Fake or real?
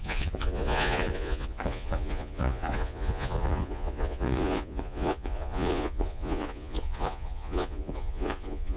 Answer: fake